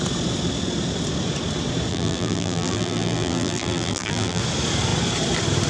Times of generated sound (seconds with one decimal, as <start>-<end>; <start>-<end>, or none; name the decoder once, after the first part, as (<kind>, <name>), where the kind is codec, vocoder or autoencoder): 1.9-4.4 (vocoder, BigVGAN v2)